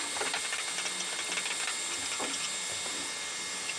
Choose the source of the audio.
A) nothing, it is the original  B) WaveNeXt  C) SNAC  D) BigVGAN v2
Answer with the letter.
A